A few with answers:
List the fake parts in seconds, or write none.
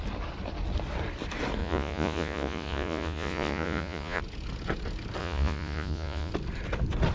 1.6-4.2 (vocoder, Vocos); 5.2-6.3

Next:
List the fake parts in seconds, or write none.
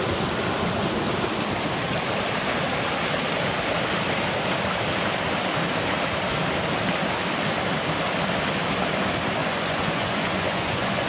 9.4-11.1 (vocoder, Vocos)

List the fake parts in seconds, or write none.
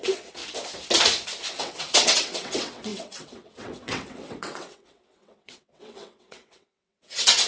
0.0-0.4 (vocoder, WaveNeXt); 1.6-7.5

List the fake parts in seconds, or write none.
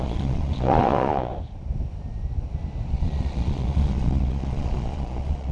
0.0-1.3 (vocoder, Vocos); 2.9-5.5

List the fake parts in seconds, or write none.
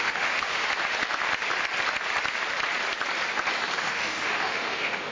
0.0-0.6 (autoencoder, DAC-VAE); 3.7-5.1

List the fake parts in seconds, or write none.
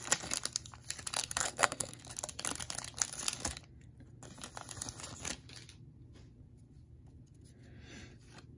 1.2-2.0 (codec, SNAC)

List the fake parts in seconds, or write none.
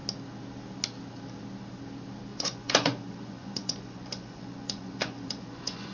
2.3-5.9 (vocoder, Vocos)